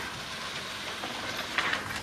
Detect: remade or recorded remade